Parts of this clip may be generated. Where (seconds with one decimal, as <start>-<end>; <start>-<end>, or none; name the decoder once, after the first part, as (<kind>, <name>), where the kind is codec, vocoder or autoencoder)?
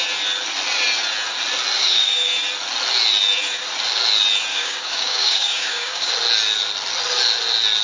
1.8-2.3 (codec, DAC); 4.5-6.1